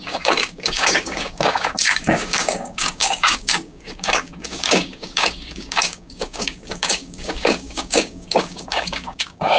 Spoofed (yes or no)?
yes